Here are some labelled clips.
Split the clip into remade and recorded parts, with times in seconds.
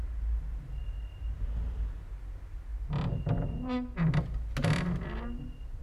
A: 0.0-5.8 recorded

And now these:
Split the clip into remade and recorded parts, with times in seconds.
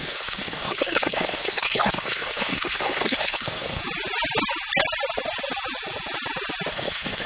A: 0.0-3.8 remade; 3.8-6.7 recorded; 6.7-7.3 remade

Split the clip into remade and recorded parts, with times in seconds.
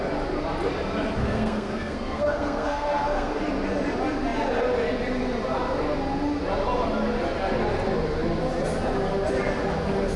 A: 0.0-1.2 recorded; 1.2-3.4 remade; 3.4-10.2 recorded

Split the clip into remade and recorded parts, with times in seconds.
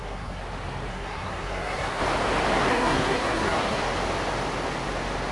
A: 0.0-0.4 remade; 0.4-0.9 recorded; 0.9-2.0 remade; 2.0-2.7 recorded; 2.7-3.8 remade; 3.8-5.3 recorded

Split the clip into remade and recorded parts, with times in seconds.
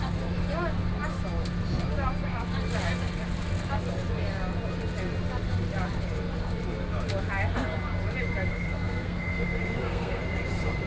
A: 0.0-8.5 recorded; 8.5-10.2 remade; 10.2-10.9 recorded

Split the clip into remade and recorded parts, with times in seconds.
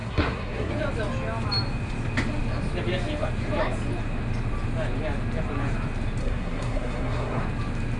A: 0.0-0.7 remade; 0.7-6.2 recorded; 6.2-7.4 remade; 7.4-8.0 recorded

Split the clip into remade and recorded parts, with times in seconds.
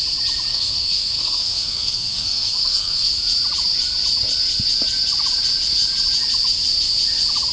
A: 0.0-0.5 recorded; 0.5-3.1 remade; 3.1-7.5 recorded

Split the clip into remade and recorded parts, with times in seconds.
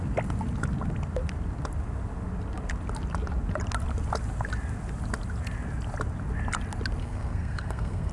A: 0.0-7.0 recorded; 7.0-8.1 remade